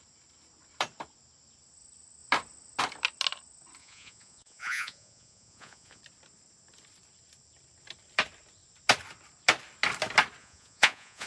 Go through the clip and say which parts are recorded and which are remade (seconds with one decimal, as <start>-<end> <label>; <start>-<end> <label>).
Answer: 0.0-3.8 recorded; 3.8-6.0 remade; 6.0-10.4 recorded; 10.4-11.3 remade